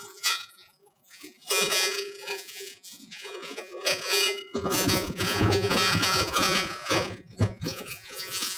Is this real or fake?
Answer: fake